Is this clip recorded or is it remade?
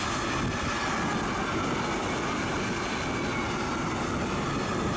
recorded